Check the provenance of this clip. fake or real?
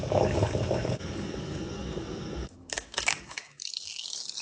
fake